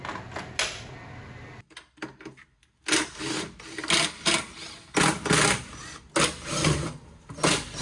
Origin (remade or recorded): recorded